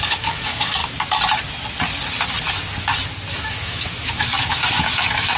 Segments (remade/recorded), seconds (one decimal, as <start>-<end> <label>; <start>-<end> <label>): 0.0-0.8 remade; 0.8-3.3 recorded; 3.3-5.4 remade